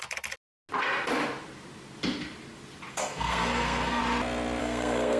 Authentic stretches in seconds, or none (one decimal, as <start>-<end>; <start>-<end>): 0.0-2.9; 4.0-4.6